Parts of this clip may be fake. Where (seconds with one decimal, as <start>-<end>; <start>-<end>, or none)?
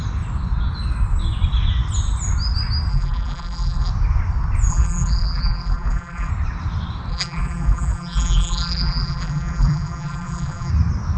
2.9-3.9; 4.7-6.3; 7.1-10.7